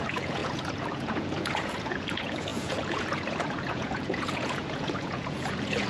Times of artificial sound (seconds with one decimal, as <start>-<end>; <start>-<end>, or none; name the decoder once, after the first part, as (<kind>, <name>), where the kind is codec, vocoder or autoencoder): 0.0-5.9 (vocoder, Vocos)